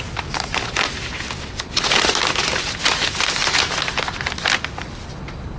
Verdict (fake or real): real